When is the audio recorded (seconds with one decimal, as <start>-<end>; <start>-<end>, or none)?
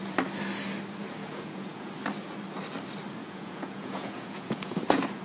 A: 0.0-1.2; 1.9-3.2